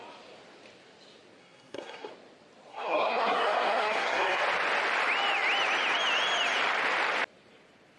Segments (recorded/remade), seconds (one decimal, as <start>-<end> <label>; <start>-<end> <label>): 0.0-1.4 recorded; 1.4-2.1 remade; 2.1-2.7 recorded; 2.7-4.4 remade; 4.4-8.0 recorded